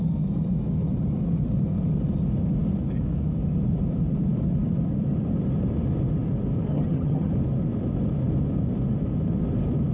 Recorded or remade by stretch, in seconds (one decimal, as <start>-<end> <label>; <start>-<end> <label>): 0.0-6.7 recorded; 6.7-7.3 remade; 7.3-9.9 recorded